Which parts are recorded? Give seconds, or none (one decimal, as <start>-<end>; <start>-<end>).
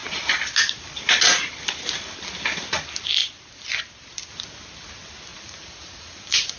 0.0-5.3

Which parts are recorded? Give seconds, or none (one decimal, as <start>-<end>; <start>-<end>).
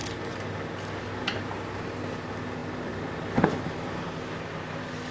0.0-5.1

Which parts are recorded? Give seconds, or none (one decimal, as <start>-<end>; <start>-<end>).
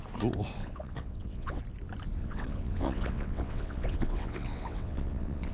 0.0-0.6; 1.6-2.2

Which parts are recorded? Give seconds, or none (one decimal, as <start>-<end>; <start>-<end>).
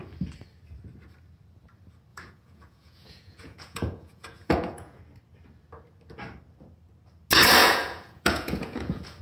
0.0-2.1; 5.0-7.6